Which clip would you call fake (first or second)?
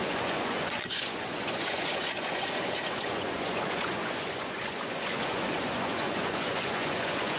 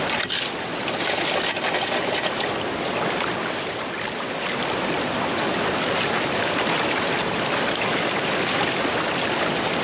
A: first